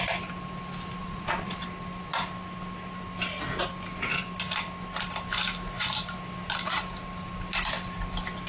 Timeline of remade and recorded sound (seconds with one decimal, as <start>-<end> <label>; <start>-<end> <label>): 0.0-1.0 recorded; 1.0-1.6 remade; 1.6-8.5 recorded